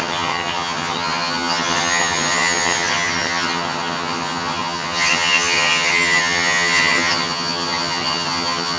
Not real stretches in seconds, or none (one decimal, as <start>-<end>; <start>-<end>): 0.0-8.8